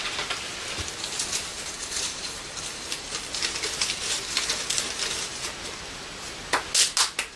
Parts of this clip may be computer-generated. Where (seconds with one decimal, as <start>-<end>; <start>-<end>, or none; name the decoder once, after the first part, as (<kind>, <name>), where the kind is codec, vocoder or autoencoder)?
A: 1.5-3.3 (vocoder, BigVGAN v2)